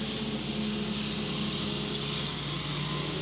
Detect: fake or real real